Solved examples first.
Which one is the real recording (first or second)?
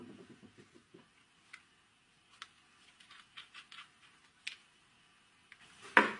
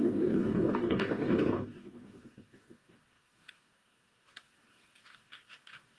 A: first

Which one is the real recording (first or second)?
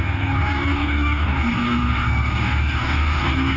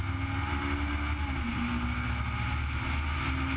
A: second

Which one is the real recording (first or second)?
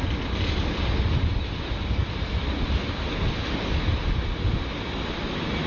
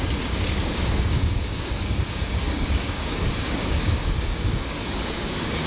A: first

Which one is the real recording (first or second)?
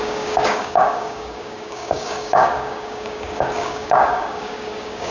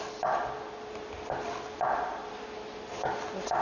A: second